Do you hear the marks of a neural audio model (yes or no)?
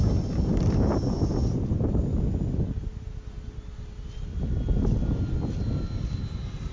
no